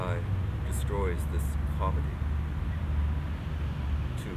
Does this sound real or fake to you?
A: real